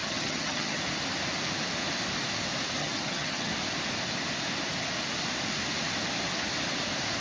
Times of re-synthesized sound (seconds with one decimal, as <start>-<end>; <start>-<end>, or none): 0.0-0.8; 2.8-3.5